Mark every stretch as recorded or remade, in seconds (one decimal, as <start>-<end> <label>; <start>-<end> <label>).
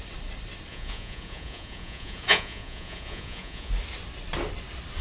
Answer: 0.0-0.7 recorded; 0.7-3.7 remade; 3.7-5.0 recorded